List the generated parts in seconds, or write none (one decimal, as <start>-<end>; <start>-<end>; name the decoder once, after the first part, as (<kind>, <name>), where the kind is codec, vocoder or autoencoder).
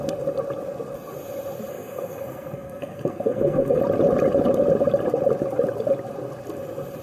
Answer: 1.7-3.8 (codec, SNAC)